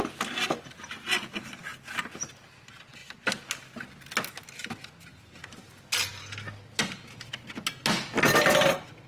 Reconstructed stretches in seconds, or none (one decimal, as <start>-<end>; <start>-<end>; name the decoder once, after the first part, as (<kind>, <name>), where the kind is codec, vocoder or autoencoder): none

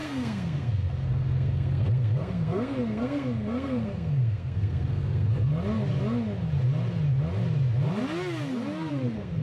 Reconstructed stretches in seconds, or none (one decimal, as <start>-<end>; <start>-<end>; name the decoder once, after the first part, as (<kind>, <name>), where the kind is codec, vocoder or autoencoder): 0.0-5.5 (codec, SNAC); 8.9-9.4